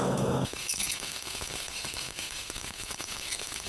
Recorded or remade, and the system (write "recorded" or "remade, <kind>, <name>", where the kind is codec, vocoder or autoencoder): remade, codec, SNAC